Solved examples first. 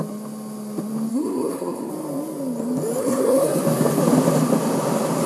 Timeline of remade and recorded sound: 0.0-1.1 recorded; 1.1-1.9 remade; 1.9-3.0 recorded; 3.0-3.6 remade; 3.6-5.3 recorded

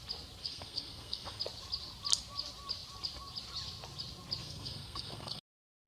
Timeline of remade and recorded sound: 0.0-0.4 recorded; 0.4-1.4 remade; 1.4-4.4 recorded; 4.4-5.4 remade; 5.4-5.9 recorded